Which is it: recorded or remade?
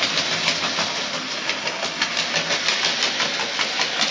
recorded